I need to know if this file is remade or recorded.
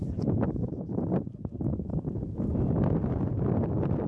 recorded